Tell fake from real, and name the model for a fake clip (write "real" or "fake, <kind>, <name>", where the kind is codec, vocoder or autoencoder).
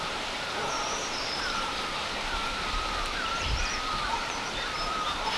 fake, vocoder, BigVGAN v2